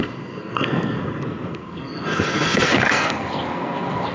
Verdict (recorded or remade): remade